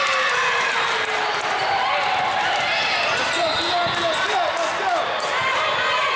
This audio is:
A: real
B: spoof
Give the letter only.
A